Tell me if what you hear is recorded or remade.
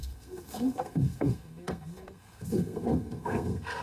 remade